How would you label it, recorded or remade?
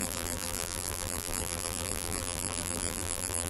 remade